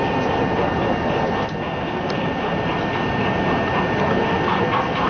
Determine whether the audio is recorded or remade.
recorded